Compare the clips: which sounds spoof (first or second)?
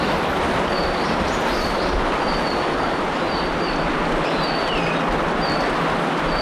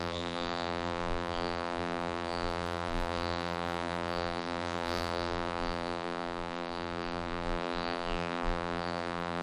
second